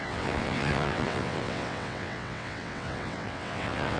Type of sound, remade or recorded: remade